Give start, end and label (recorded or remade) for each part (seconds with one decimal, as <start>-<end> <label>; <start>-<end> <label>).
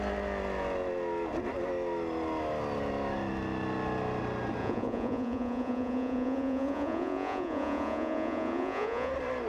0.0-4.6 recorded; 4.6-9.1 remade; 9.1-9.5 recorded